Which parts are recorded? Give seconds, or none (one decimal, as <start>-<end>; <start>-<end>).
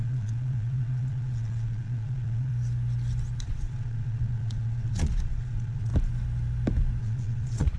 2.5-3.4; 5.9-7.0